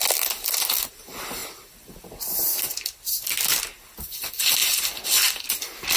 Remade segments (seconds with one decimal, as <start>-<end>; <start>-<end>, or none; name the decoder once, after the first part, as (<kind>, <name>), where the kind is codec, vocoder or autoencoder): none